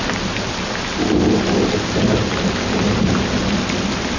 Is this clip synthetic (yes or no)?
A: no